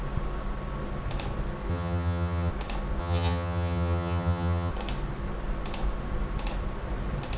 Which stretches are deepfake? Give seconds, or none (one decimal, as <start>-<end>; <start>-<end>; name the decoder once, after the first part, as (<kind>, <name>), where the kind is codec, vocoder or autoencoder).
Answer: 1.7-2.5 (vocoder, HiFi-GAN); 3.0-4.7

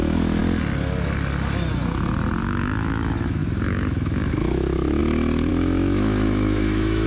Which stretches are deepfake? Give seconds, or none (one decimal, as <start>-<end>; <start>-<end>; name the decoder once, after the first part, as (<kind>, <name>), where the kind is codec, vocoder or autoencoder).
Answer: 0.0-0.4 (autoencoder, DAC-VAE); 2.4-5.0; 5.5-7.1

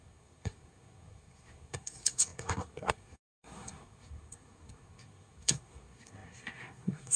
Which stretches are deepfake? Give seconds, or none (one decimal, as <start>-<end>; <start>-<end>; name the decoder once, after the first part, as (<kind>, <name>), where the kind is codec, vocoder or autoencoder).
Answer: 0.0-7.2 (codec, SNAC)

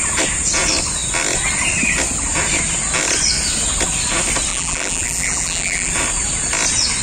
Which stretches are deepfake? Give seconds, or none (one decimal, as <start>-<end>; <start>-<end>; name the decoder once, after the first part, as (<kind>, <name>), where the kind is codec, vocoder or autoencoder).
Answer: 4.5-5.9 (vocoder, BigVGAN v2)

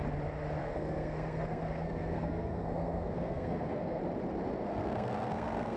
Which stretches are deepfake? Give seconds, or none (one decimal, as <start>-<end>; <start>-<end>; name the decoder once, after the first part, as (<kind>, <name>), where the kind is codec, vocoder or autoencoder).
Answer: 0.6-4.0 (codec, SNAC); 4.7-5.8

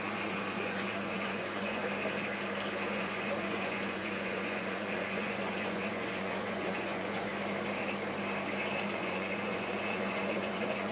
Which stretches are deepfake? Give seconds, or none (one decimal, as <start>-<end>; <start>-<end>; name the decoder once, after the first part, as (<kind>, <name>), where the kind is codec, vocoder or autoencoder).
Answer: 0.0-1.8 (vocoder, Vocos); 2.9-7.3; 8.9-10.9